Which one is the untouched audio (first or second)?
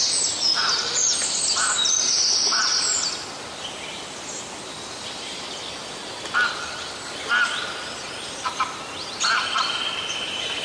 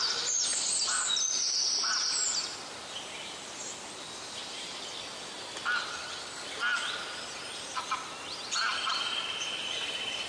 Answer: second